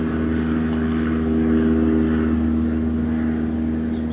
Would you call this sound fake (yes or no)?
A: no